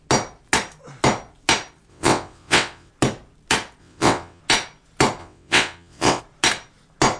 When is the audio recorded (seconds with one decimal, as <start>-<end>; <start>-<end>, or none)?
0.0-1.9; 2.9-3.8; 4.4-5.2; 6.2-7.2

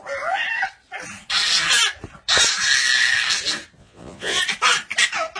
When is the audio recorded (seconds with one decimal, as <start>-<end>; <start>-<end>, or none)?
0.0-3.8; 4.4-5.4

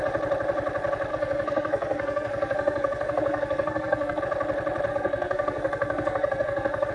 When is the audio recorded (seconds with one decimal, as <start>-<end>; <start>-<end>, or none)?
0.0-1.1; 4.2-4.9

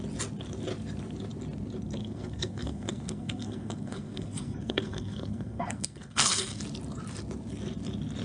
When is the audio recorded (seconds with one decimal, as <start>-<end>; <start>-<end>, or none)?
0.0-2.0; 6.6-8.2